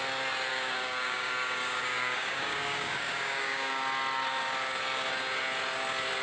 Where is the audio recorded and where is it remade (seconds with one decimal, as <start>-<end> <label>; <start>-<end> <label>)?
0.0-0.5 recorded; 0.5-3.8 remade; 3.8-6.2 recorded